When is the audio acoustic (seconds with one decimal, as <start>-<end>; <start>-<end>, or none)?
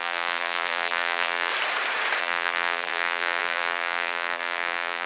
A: 1.5-2.2